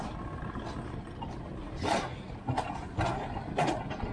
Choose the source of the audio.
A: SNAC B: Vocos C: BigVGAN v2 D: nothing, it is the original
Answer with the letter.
D